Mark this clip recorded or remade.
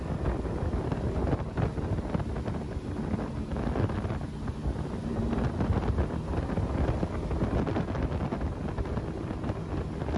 recorded